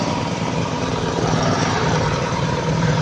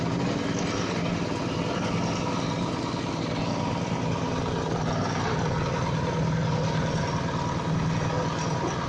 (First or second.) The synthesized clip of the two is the first